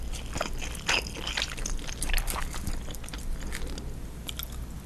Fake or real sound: real